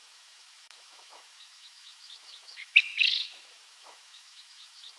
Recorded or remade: remade